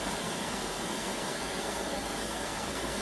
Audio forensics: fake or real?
fake